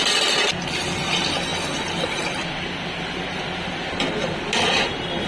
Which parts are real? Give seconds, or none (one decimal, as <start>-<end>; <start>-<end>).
0.0-5.3